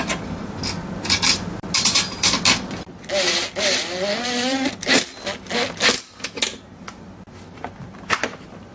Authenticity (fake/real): real